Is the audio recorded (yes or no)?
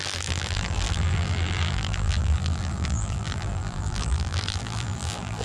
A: no